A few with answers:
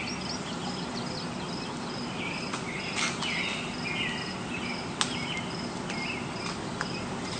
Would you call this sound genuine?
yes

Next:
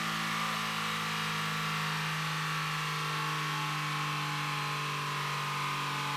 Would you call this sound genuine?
yes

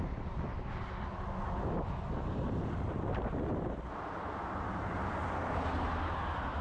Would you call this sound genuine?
no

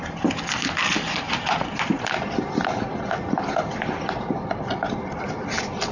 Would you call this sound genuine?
yes